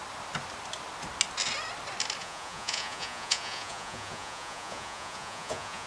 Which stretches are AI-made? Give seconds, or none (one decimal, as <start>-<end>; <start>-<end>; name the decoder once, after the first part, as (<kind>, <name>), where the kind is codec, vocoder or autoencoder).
2.2-5.9 (vocoder, Vocos)